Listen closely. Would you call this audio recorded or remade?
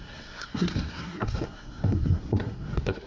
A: remade